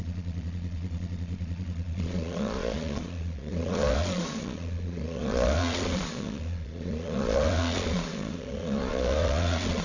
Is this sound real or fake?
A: fake